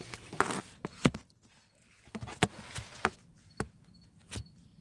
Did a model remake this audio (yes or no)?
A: no